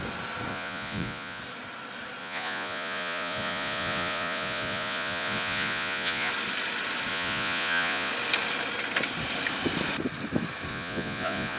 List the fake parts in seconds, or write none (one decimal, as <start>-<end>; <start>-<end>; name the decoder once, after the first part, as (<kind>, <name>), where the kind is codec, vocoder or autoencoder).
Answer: 0.5-1.4 (vocoder, Vocos); 2.2-6.3; 7.1-8.1; 10.7-11.6